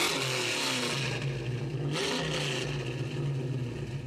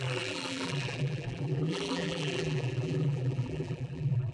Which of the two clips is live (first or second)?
first